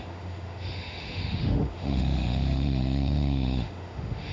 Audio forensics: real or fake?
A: fake